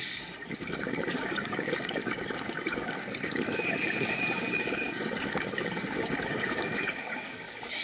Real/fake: fake